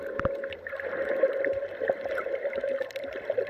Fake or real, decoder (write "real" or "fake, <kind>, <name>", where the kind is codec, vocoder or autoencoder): real